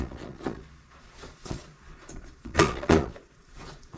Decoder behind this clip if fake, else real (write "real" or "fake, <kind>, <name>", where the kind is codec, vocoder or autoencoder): fake, vocoder, Vocos